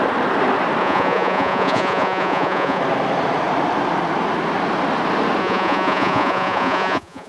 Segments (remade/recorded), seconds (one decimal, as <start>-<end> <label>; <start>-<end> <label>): 0.0-0.8 recorded; 0.8-2.8 remade; 2.8-5.4 recorded; 5.4-7.3 remade